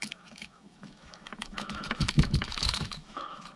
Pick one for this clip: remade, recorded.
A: remade